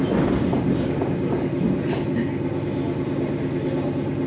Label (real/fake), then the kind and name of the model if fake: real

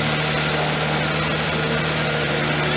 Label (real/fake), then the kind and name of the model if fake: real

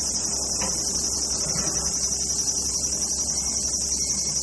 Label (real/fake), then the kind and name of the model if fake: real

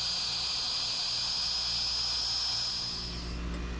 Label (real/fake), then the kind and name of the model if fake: real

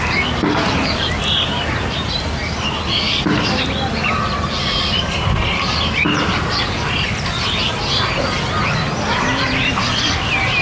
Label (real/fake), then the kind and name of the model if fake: real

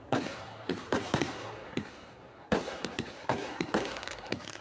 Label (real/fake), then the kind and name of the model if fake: fake, codec, SNAC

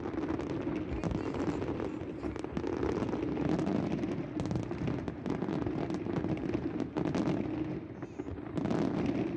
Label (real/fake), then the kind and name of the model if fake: real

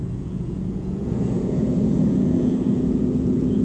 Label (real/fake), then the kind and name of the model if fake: fake, vocoder, Vocos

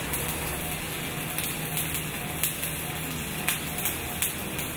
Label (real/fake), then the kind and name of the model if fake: real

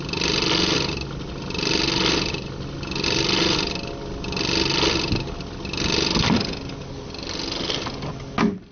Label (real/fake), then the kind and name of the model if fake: real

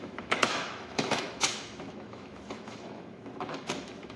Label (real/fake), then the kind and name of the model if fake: fake, autoencoder, DAC-VAE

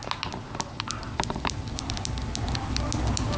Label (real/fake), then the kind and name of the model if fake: fake, vocoder, BigVGAN v2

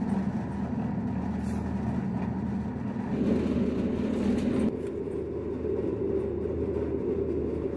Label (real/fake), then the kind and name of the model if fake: real